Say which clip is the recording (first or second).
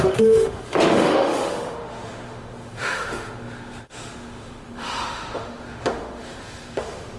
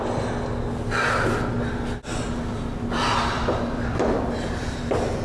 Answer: second